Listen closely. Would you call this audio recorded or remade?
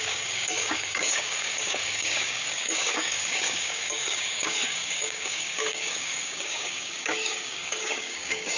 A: remade